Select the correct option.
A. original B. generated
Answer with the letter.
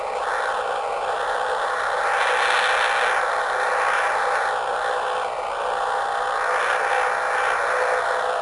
A